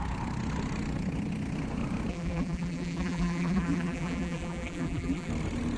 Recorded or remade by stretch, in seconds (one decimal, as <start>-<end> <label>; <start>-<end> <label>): 0.0-2.1 recorded; 2.1-5.3 remade; 5.3-5.8 recorded